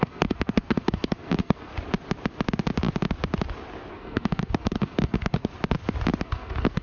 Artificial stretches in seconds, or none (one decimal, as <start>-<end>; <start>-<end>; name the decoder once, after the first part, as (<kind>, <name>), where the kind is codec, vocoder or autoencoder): 0.0-1.7 (codec, SNAC); 3.9-5.5; 6.2-6.8